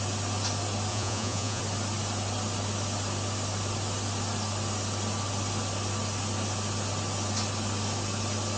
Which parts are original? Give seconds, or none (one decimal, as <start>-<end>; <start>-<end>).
0.0-0.9; 1.6-8.6